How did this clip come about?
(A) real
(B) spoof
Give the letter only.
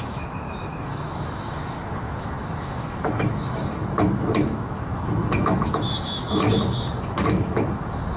B